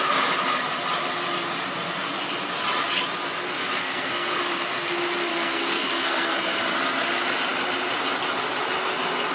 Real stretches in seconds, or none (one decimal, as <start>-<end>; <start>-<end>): 0.0-3.8; 4.4-5.3; 6.6-9.3